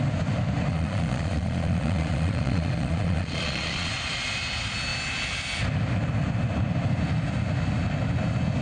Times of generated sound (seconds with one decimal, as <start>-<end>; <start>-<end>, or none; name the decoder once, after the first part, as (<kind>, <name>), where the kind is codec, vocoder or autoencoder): 0.7-3.9 (vocoder, Vocos)